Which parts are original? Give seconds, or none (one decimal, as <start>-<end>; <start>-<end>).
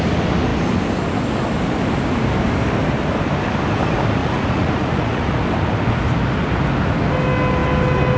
0.0-4.2; 5.4-8.2